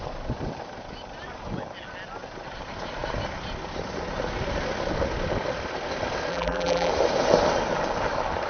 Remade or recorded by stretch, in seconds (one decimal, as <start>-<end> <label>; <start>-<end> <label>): 0.0-6.3 recorded; 6.3-6.9 remade; 6.9-8.5 recorded